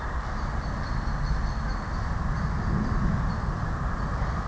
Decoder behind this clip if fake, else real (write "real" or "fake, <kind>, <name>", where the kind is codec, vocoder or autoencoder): real